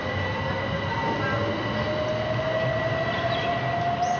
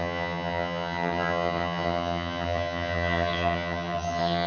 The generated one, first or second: second